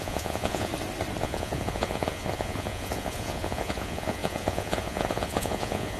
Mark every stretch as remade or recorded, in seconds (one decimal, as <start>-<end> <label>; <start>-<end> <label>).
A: 0.0-0.7 remade; 0.7-1.2 recorded; 1.2-6.0 remade